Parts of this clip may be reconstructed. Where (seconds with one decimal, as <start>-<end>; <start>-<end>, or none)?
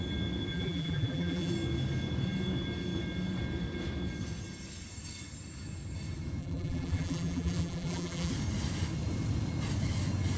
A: 0.5-1.5; 6.4-8.3